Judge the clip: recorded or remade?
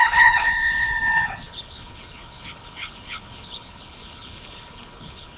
remade